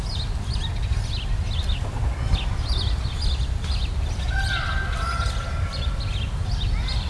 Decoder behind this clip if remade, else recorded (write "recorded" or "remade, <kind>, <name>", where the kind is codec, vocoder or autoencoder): recorded